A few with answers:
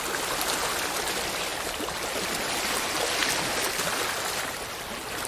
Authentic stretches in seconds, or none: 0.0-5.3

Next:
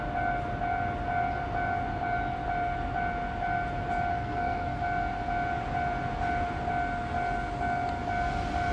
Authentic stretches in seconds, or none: 0.0-4.1; 4.8-8.7

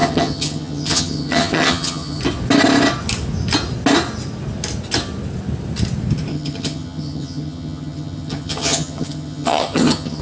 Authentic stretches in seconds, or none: 2.2-6.3

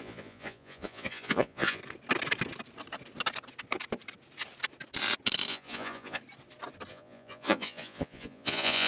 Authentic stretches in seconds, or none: 1.8-5.5; 6.2-6.9

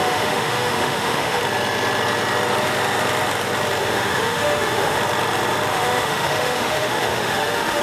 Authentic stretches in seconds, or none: 1.4-3.8; 5.0-5.7

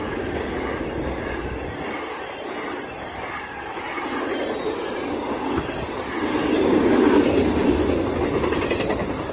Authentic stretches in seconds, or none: 0.0-9.3

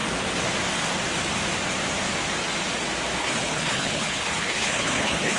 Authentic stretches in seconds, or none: 0.0-3.2